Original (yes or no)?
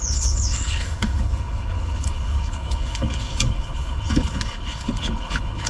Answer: no